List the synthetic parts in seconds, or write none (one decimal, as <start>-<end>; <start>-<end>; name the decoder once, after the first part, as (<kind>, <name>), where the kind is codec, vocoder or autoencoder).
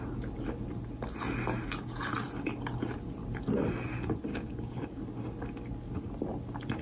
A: 4.3-5.0 (codec, DAC)